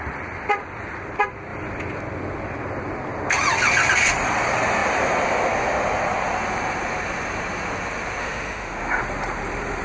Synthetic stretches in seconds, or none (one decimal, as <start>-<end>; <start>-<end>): 8.2-9.0

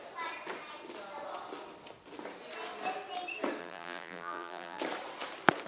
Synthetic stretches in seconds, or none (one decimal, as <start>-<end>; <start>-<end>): 3.6-4.8

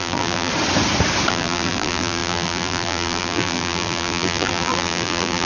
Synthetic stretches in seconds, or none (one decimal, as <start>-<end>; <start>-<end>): 0.0-0.5; 1.3-5.5

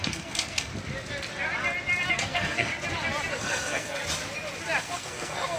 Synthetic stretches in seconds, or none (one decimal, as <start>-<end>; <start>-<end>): 0.0-0.7; 2.1-2.7; 3.3-4.0; 4.8-5.6

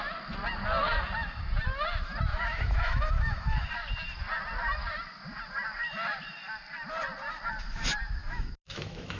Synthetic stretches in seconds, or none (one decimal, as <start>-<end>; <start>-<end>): 2.3-3.7; 8.2-9.2

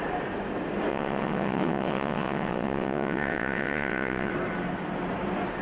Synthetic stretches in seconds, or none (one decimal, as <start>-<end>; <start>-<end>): 0.9-4.3

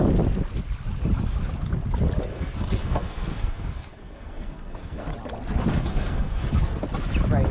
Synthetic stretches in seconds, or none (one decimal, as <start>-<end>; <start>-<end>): 2.3-5.1; 5.7-6.8

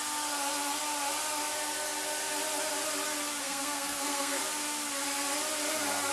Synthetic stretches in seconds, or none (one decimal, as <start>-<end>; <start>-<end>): 3.4-4.4